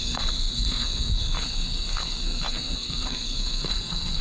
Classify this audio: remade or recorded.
remade